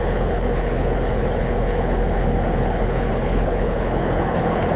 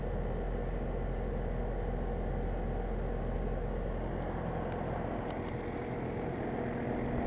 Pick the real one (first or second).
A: second